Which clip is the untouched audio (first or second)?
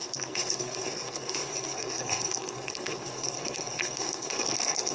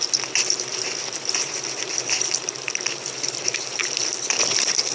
second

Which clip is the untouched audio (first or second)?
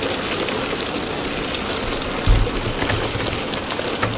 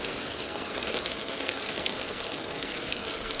first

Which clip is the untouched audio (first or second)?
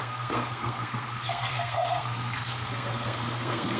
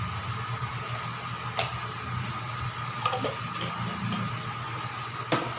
second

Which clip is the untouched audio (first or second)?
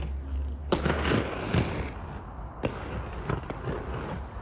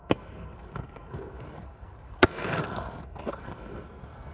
first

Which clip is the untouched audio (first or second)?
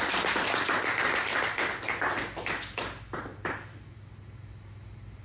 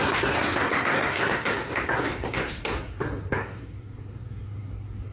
first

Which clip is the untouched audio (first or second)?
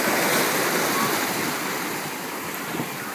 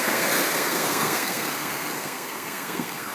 first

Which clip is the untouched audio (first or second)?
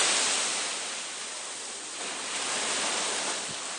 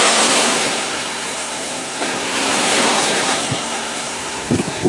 first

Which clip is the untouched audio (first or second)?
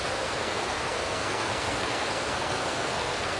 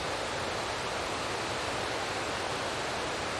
second